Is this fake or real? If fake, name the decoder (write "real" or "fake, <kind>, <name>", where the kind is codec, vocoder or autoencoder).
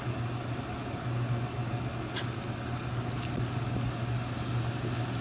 real